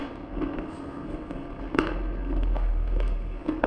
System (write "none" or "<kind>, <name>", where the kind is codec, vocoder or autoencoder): codec, SNAC